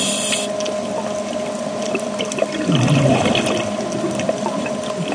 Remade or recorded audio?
recorded